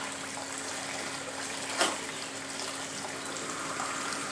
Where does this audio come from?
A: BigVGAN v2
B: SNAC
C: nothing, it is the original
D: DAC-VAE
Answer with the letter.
C